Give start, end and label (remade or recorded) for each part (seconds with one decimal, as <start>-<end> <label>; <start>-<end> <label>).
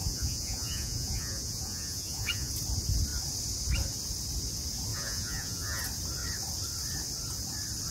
0.0-2.5 remade; 2.5-4.9 recorded; 4.9-5.8 remade; 5.8-7.9 recorded